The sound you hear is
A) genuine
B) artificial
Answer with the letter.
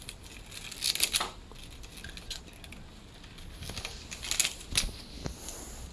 A